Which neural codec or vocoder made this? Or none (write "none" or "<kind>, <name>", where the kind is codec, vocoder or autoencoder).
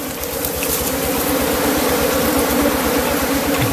none